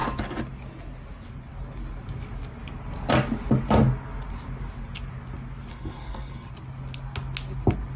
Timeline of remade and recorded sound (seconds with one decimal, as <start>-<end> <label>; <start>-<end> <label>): 0.0-5.7 recorded; 5.7-6.5 remade; 6.5-8.0 recorded